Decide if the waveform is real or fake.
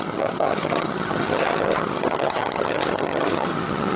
fake